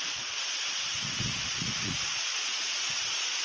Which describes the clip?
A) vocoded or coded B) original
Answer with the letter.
A